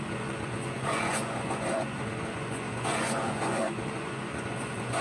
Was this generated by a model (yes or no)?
yes